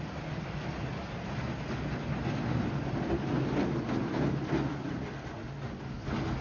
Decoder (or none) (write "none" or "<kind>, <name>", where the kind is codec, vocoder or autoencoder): none